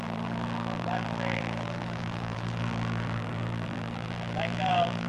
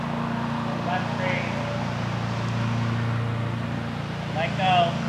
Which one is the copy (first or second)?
first